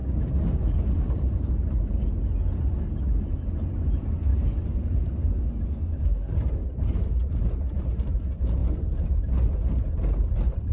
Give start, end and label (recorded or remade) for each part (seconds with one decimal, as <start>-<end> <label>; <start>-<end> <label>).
0.0-3.7 recorded; 3.7-4.3 remade; 4.3-5.9 recorded; 5.9-10.7 remade